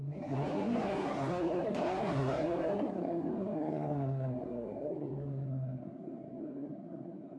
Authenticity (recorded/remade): remade